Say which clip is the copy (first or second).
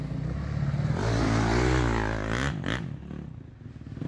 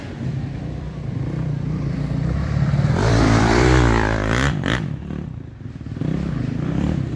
second